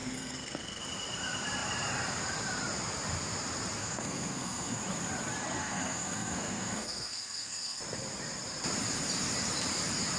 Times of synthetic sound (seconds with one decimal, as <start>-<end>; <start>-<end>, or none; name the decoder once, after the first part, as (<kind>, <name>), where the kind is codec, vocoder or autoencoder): 0.0-0.8 (codec, SNAC); 3.8-4.8; 5.6-7.8